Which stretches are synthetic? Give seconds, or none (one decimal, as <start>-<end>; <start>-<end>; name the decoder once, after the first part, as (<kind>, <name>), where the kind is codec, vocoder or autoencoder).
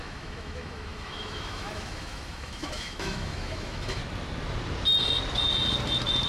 0.0-4.0 (autoencoder, DAC-VAE)